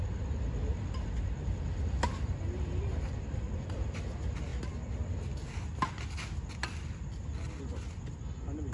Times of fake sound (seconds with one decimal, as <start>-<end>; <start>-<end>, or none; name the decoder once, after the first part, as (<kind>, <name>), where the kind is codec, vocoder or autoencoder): none